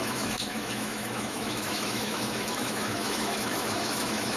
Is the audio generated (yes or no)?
yes